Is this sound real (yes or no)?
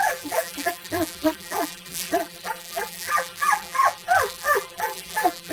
no